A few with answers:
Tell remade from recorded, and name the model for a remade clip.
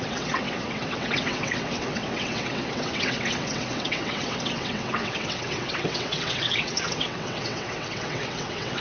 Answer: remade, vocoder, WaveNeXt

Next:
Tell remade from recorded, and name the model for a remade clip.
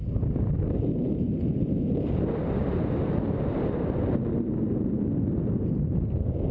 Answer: recorded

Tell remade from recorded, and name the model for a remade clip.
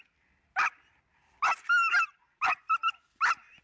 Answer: recorded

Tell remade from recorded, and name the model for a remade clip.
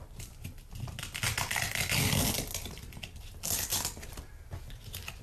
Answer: recorded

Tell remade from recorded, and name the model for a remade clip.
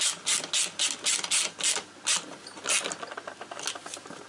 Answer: recorded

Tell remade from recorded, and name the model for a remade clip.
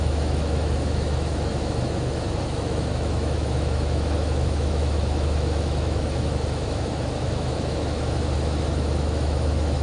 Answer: remade, autoencoder, DAC-VAE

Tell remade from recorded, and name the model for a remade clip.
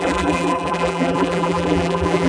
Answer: remade, vocoder, BigVGAN v2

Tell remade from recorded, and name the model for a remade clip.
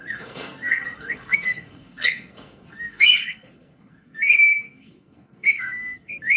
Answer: remade, codec, SNAC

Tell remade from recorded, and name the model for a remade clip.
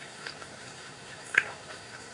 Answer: remade, codec, SNAC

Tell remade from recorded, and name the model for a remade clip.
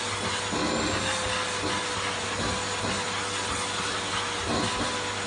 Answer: recorded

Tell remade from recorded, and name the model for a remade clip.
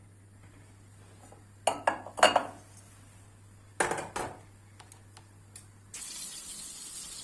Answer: recorded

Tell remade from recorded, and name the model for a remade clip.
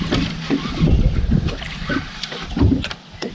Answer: recorded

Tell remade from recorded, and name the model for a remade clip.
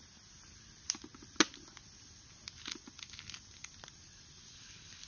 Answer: recorded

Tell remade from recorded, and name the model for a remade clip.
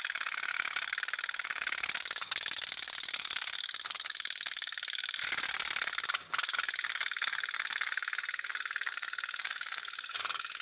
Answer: remade, codec, DAC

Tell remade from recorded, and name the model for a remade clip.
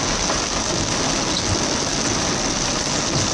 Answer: recorded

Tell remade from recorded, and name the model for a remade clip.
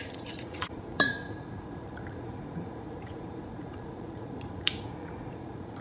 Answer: remade, vocoder, Vocos